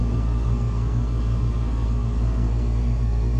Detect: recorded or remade remade